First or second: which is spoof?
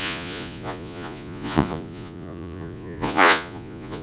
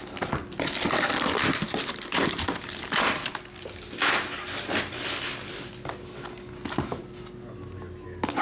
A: first